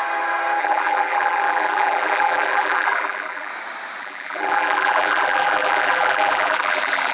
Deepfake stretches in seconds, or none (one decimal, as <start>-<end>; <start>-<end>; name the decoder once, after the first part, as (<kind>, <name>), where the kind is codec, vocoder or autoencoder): 0.6-3.5 (vocoder, BigVGAN v2); 4.0-7.1